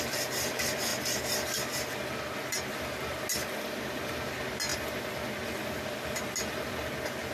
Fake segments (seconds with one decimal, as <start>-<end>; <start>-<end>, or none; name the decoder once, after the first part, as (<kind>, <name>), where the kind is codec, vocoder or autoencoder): none